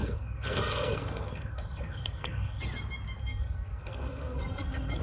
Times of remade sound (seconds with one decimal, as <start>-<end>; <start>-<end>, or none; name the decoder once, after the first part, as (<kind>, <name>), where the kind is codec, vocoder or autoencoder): 0.0-2.6 (codec, SNAC); 3.2-5.0